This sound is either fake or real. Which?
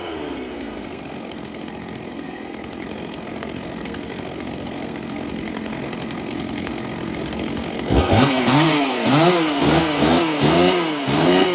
fake